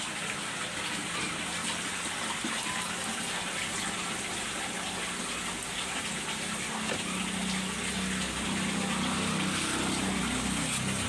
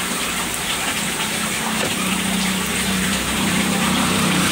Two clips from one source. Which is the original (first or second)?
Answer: first